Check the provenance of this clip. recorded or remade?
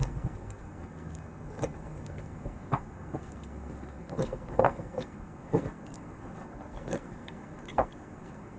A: remade